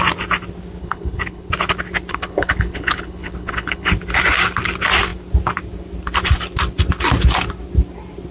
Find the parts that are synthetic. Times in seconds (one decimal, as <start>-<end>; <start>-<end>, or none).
0.8-1.5; 2.1-3.9